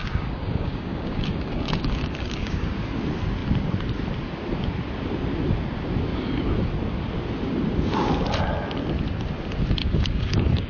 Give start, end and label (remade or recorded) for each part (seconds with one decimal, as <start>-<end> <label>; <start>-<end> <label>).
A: 0.0-3.0 remade; 3.0-9.8 recorded; 9.8-10.7 remade